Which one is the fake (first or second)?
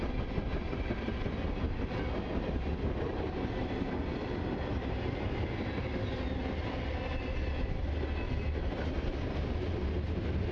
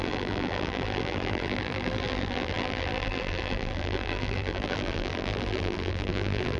second